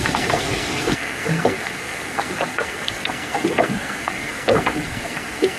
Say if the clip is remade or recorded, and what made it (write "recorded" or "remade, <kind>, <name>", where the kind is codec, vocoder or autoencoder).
remade, codec, SNAC